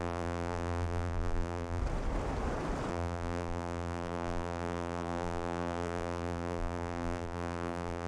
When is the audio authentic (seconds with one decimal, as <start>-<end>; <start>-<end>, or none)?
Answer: 1.8-2.9